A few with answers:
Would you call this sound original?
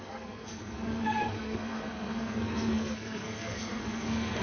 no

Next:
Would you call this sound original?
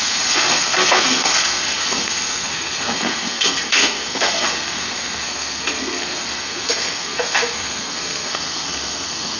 no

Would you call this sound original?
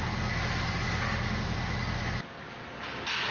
yes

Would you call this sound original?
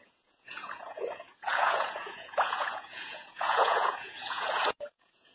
no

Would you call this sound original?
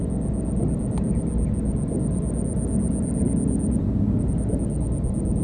yes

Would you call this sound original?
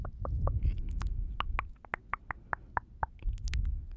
yes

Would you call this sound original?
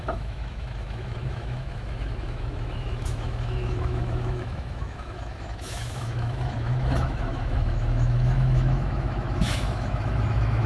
no